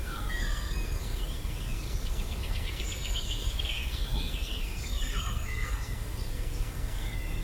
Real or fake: fake